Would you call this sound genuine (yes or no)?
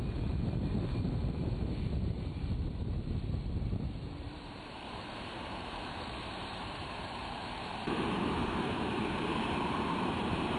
no